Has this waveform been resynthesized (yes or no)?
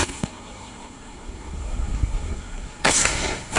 yes